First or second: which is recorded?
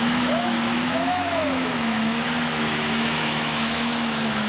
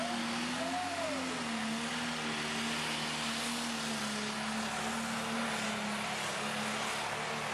second